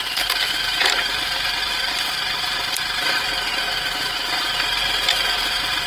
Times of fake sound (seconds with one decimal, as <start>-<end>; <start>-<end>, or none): 0.0-3.5